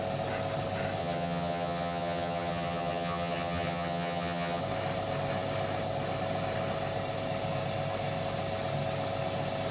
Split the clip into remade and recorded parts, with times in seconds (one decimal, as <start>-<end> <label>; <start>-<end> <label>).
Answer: 0.0-1.0 recorded; 1.0-4.6 remade; 4.6-9.7 recorded